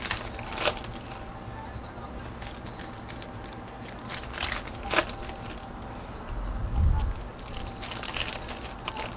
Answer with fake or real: real